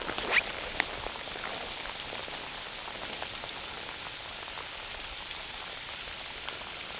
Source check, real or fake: real